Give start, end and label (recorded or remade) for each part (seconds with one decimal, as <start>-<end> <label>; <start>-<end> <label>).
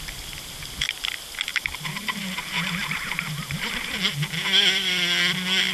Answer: 0.0-1.5 recorded; 1.5-4.1 remade; 4.1-5.7 recorded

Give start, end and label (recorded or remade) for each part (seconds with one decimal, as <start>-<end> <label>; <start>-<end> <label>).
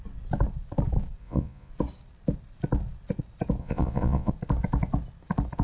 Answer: 0.0-1.2 recorded; 1.2-1.7 remade; 1.7-3.6 recorded; 3.6-4.3 remade; 4.3-5.6 recorded